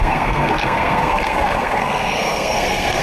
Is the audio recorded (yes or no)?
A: no